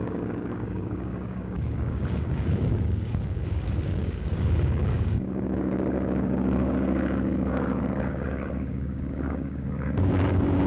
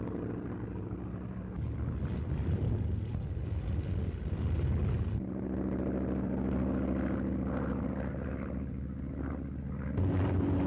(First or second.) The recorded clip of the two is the second